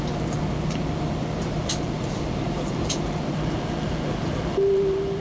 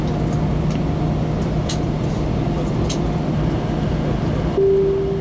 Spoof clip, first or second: first